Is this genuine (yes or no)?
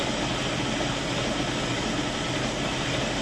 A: yes